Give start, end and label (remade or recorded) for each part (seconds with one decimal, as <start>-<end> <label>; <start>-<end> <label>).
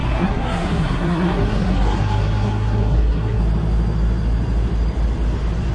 0.0-3.4 remade; 3.4-5.7 recorded